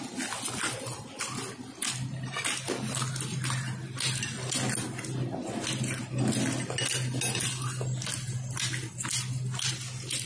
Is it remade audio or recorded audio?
recorded